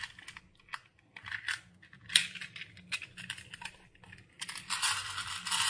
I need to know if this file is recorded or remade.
recorded